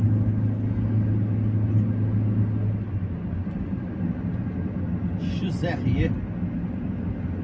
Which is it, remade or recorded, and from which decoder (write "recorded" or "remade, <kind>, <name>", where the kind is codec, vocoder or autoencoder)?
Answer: recorded